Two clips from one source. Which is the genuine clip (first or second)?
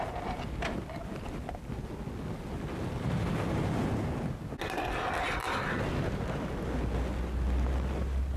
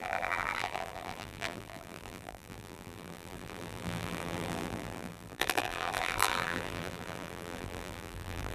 first